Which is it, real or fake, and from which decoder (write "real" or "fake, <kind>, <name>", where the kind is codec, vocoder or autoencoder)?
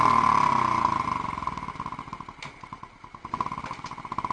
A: real